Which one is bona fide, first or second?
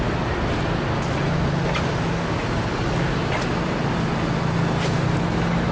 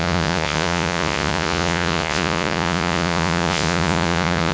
first